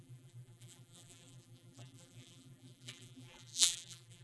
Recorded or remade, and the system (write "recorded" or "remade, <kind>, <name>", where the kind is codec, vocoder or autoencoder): remade, vocoder, BigVGAN v2